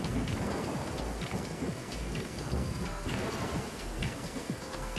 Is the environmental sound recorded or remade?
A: remade